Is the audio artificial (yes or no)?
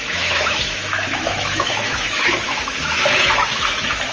yes